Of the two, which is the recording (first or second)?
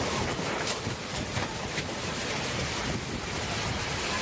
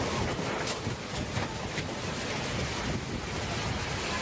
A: second